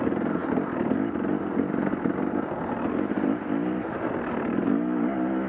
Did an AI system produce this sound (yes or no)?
yes